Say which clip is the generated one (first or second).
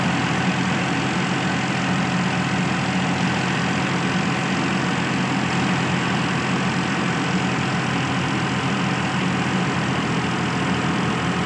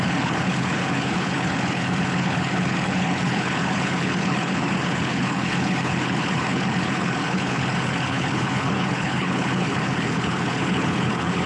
second